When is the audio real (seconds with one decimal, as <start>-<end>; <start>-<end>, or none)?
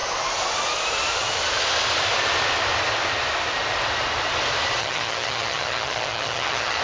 0.0-4.8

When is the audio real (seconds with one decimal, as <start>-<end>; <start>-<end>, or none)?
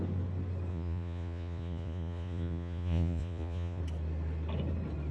0.0-0.7; 3.8-5.1